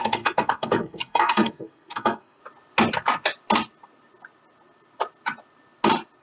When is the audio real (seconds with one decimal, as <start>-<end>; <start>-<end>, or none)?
2.4-6.2